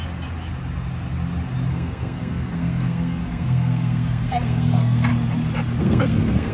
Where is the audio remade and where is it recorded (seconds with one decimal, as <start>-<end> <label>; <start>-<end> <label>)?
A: 0.0-1.7 recorded; 1.7-5.1 remade; 5.1-5.8 recorded; 5.8-6.5 remade

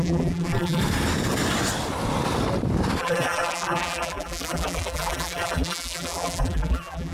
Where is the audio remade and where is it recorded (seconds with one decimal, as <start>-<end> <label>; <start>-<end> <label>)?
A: 0.0-0.8 remade; 0.8-3.0 recorded; 3.0-7.1 remade

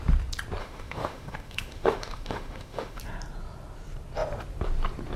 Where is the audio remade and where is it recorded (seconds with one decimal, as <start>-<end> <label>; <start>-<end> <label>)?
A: 0.0-0.6 recorded; 0.6-3.0 remade; 3.0-5.2 recorded

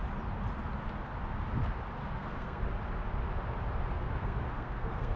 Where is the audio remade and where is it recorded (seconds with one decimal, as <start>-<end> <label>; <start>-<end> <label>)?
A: 0.0-2.0 recorded; 2.0-2.6 remade; 2.6-3.9 recorded; 3.9-5.2 remade

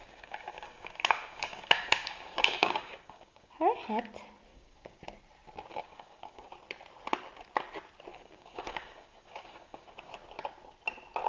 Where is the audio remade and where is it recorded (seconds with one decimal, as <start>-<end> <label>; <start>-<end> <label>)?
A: 0.0-3.5 remade; 3.5-4.5 recorded; 4.5-5.0 remade; 5.0-5.7 recorded; 5.7-6.5 remade; 6.5-8.1 recorded; 8.1-10.1 remade; 10.1-11.3 recorded

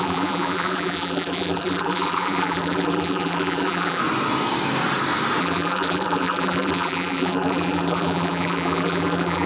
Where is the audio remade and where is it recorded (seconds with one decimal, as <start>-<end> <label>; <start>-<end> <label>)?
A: 0.0-4.0 remade; 4.0-5.4 recorded; 5.4-9.5 remade

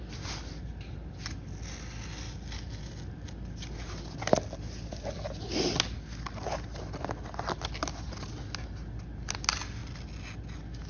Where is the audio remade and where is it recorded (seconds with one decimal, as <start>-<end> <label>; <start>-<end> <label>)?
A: 0.0-10.9 recorded